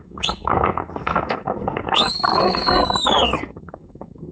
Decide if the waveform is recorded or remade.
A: remade